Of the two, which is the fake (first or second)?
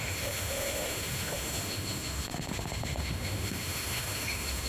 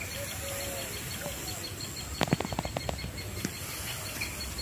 first